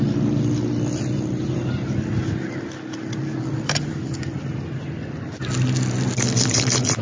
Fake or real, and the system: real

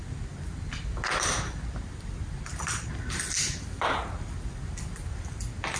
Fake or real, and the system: real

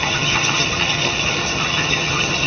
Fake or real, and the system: fake, vocoder, HiFi-GAN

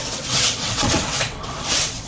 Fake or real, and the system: fake, vocoder, WaveNeXt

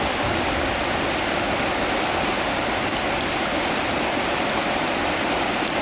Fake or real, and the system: real